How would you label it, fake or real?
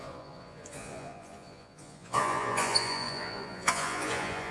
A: fake